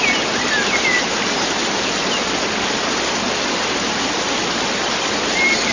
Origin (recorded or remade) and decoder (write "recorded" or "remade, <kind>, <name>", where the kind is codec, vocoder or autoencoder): recorded